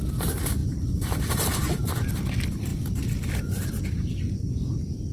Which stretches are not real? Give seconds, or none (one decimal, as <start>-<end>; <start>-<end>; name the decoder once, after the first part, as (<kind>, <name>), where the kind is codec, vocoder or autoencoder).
0.6-1.9 (vocoder, BigVGAN v2)